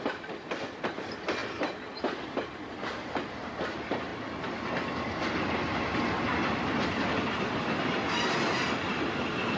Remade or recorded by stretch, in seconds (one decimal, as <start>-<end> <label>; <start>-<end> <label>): 0.0-4.1 remade; 4.1-7.4 recorded; 7.4-9.6 remade